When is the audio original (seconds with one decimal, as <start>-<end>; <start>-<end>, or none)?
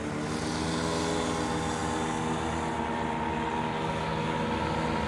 0.0-5.1